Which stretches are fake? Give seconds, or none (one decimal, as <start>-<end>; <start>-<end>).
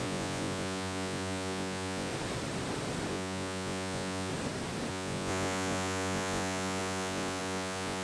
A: 0.0-2.1; 3.1-4.3; 4.9-8.0